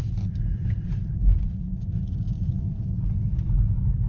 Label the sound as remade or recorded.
recorded